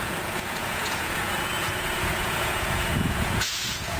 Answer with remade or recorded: remade